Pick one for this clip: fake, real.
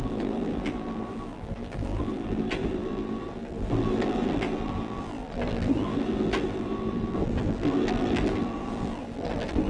fake